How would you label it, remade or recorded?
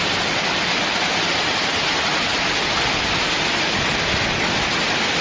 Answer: recorded